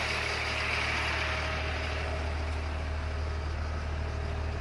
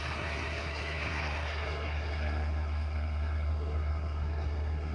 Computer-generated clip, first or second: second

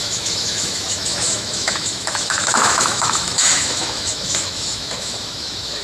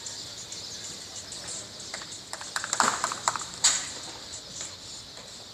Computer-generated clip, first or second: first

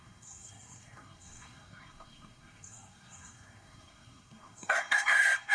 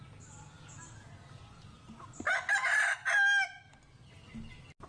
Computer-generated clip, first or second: first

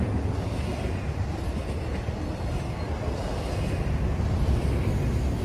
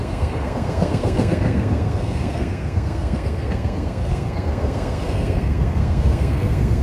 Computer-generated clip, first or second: second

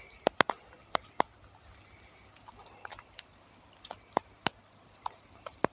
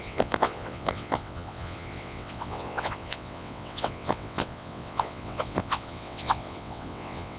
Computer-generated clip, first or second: second